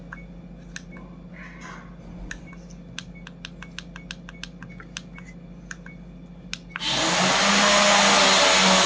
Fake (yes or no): no